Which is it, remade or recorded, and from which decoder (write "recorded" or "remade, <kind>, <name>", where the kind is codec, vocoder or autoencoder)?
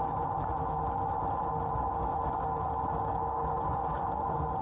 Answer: recorded